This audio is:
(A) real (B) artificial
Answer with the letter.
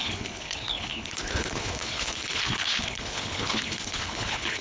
B